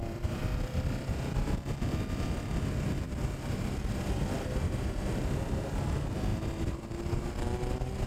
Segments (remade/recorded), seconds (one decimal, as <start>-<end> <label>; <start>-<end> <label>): 0.0-8.1 recorded

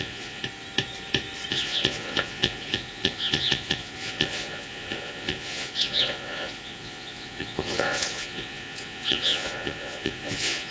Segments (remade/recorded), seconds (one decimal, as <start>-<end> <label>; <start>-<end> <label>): 0.0-0.4 remade; 0.4-1.5 recorded; 1.5-10.7 remade

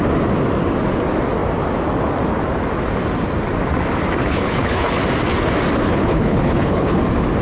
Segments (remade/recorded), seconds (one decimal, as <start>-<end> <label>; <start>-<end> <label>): 0.0-4.2 recorded; 4.2-4.9 remade; 4.9-5.8 recorded; 5.8-7.0 remade; 7.0-7.4 recorded

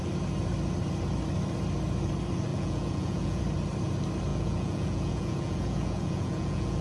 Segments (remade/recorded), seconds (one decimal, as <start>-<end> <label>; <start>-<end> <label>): 0.0-2.5 recorded; 2.5-3.4 remade; 3.4-4.3 recorded; 4.3-6.8 remade

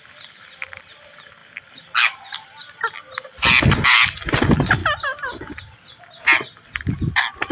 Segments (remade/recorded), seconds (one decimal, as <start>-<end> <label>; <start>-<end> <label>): 0.0-7.5 recorded

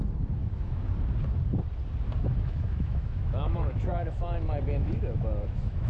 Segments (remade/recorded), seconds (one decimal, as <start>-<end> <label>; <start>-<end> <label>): 0.0-0.4 recorded; 0.4-0.9 remade; 0.9-2.2 recorded; 2.2-5.9 remade

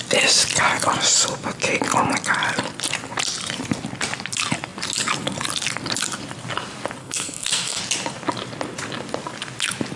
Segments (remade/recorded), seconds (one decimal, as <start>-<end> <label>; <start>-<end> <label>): 0.0-7.0 recorded; 7.0-7.8 remade; 7.8-10.0 recorded

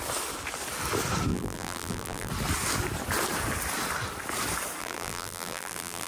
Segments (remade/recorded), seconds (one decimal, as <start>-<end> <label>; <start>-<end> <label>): 0.0-1.3 recorded; 1.3-2.3 remade; 2.3-4.8 recorded; 4.8-6.1 remade